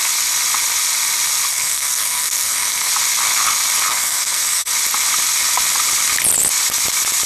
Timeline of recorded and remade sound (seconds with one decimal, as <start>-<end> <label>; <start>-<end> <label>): 0.0-1.5 recorded; 1.5-2.9 remade; 2.9-3.9 recorded; 3.9-4.7 remade; 4.7-7.3 recorded